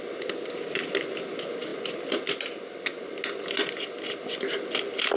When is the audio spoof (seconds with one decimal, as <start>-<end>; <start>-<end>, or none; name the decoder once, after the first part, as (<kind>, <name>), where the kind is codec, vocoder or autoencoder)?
none